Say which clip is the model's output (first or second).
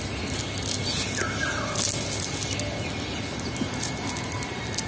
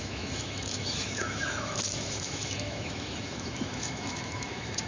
second